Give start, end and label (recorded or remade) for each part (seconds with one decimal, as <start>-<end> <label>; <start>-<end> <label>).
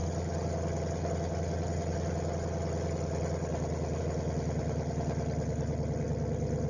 0.0-6.7 recorded